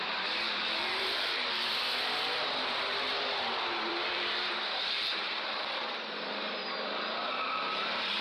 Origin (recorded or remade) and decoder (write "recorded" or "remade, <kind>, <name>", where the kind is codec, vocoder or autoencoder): remade, vocoder, BigVGAN v2